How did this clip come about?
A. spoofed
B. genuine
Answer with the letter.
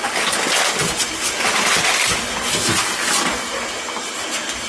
B